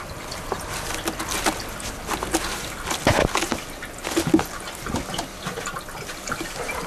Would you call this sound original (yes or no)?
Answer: yes